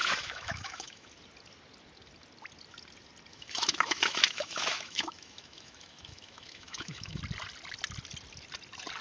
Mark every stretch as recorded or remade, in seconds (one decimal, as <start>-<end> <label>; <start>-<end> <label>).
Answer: 0.0-1.1 remade; 1.1-3.3 recorded; 3.3-7.2 remade; 7.2-9.0 recorded